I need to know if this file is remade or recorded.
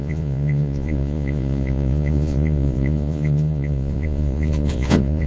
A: remade